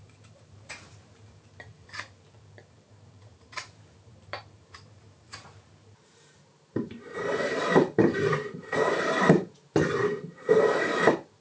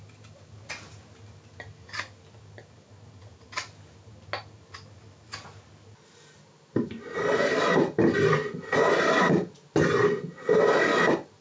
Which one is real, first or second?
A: second